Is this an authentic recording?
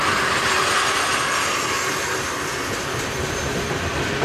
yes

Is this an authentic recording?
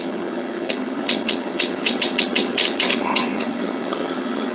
no